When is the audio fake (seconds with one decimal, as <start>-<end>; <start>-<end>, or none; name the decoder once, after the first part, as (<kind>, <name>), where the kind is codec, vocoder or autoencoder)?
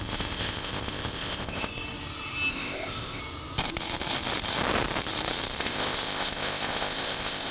0.0-1.7 (codec, ZipCodec); 2.5-3.2; 5.6-7.5